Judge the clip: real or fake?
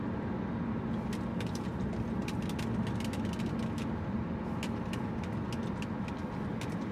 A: real